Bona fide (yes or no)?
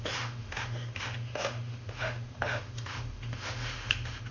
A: no